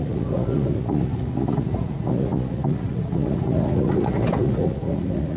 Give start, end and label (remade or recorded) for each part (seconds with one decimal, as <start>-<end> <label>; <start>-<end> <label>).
0.0-5.4 remade